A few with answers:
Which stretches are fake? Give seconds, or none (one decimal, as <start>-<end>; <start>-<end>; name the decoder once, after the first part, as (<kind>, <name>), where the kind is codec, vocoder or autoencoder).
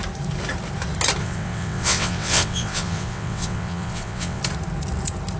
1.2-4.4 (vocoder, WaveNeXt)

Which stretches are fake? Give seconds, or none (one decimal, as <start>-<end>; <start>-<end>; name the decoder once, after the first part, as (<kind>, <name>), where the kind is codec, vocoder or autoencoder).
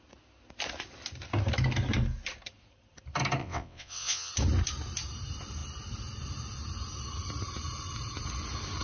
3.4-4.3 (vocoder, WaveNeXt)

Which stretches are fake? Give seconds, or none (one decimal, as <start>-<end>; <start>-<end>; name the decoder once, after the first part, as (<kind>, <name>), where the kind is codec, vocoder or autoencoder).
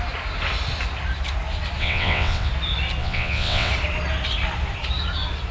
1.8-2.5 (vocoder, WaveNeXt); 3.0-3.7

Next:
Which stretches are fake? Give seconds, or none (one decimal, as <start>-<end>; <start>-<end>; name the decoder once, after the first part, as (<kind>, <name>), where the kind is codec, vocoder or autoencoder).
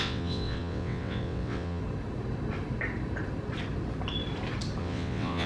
0.0-1.8 (vocoder, WaveNeXt); 4.8-5.5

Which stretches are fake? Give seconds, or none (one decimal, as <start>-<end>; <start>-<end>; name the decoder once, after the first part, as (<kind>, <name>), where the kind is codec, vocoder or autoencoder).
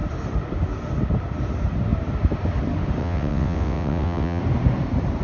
3.0-4.4 (vocoder, WaveNeXt)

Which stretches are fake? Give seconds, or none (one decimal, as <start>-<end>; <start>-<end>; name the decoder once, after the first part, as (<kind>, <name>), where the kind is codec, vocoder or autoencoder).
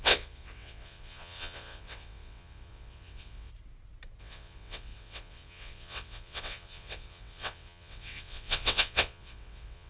0.0-3.5 (vocoder, WaveNeXt); 4.2-9.9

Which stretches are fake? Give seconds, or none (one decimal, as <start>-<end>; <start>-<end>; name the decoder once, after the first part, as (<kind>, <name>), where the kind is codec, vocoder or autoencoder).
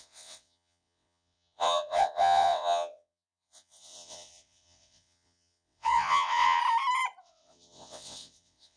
0.0-6.6 (vocoder, WaveNeXt); 7.2-8.8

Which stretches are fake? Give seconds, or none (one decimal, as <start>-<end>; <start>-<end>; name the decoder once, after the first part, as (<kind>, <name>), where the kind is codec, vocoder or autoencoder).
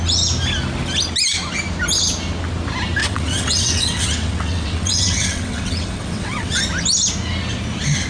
3.0-6.6 (vocoder, WaveNeXt)